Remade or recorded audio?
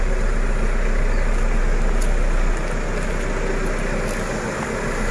recorded